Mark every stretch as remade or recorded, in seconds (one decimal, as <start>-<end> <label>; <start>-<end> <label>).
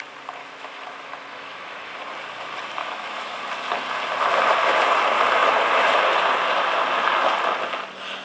0.0-0.4 recorded; 0.4-1.9 remade; 1.9-2.8 recorded; 2.8-3.4 remade; 3.4-8.2 recorded